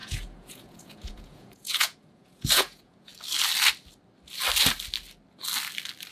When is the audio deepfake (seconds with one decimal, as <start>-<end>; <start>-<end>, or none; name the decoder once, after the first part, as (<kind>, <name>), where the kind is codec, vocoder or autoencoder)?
0.0-3.1 (vocoder, Vocos)